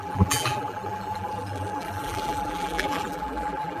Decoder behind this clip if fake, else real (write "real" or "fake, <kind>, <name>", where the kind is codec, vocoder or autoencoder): fake, vocoder, BigVGAN v2